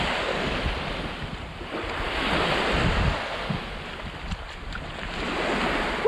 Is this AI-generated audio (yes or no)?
no